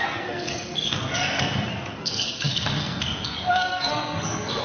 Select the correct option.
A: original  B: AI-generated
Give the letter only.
B